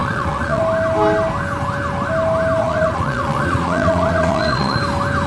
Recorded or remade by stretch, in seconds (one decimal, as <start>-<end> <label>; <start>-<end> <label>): 0.0-0.6 remade; 0.6-2.6 recorded; 2.6-4.8 remade; 4.8-5.3 recorded